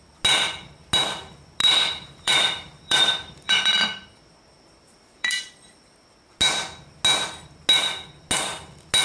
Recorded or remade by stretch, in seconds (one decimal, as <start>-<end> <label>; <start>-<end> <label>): 0.0-1.6 recorded; 1.6-5.9 remade; 5.9-9.0 recorded